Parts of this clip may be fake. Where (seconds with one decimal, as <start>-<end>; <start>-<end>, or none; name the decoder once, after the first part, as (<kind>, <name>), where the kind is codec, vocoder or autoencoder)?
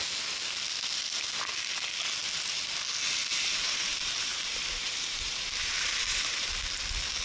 3.3-6.6 (vocoder, BigVGAN v2)